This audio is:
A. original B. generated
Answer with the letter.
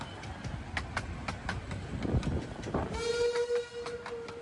A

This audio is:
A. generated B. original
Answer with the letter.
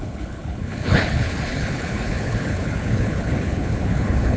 A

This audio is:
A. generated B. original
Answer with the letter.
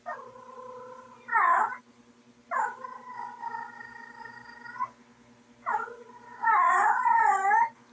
B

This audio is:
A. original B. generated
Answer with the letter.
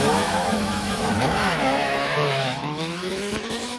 B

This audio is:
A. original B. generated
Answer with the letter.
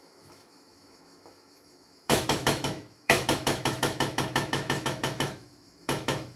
B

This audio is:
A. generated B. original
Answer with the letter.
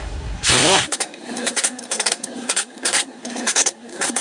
A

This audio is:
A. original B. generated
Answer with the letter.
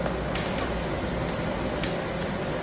A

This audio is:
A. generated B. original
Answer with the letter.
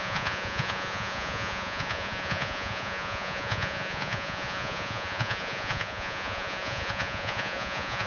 A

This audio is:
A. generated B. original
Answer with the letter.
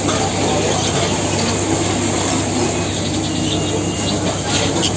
B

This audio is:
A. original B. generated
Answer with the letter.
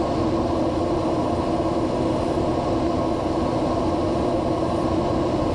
A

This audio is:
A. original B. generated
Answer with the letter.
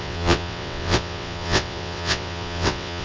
B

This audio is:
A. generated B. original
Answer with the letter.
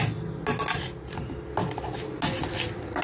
B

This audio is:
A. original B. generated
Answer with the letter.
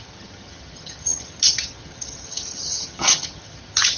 B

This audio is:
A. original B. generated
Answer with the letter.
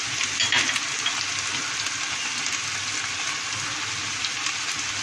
A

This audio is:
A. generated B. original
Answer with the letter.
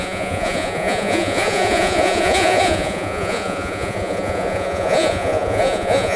A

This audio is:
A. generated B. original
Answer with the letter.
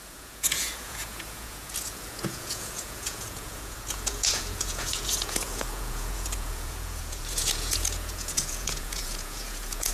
A